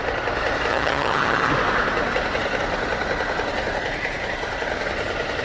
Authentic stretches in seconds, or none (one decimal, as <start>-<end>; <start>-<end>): 0.0-0.7; 1.5-5.4